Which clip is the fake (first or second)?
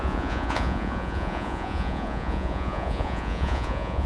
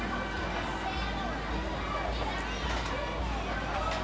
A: first